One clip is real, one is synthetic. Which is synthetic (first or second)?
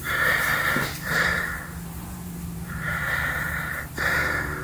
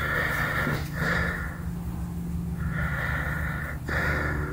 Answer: first